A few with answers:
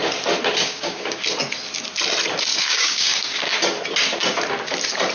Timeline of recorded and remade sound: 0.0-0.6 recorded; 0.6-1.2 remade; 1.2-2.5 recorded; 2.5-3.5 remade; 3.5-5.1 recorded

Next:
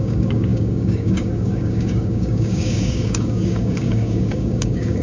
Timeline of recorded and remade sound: 0.0-5.0 remade